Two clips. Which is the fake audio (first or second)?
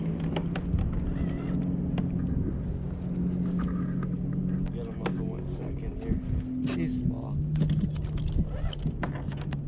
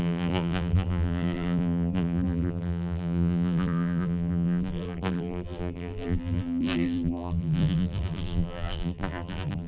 second